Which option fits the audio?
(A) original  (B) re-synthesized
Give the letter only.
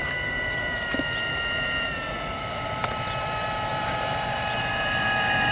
B